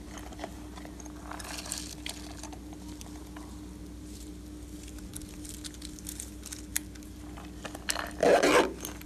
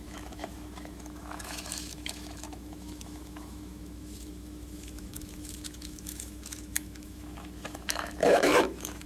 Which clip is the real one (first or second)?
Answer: first